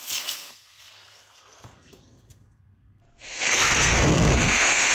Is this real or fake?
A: fake